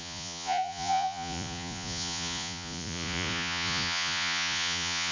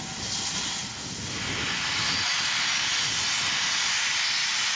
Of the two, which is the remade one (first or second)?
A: first